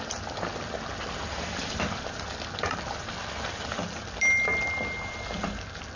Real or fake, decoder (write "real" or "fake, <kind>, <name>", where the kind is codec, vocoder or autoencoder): real